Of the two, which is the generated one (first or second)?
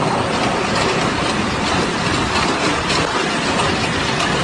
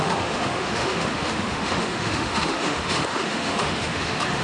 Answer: second